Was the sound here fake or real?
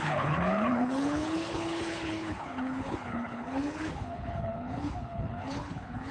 fake